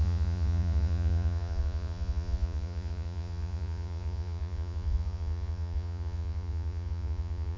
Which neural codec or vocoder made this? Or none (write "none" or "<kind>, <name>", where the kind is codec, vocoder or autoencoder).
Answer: vocoder, Vocos